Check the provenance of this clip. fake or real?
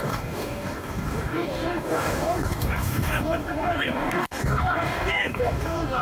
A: fake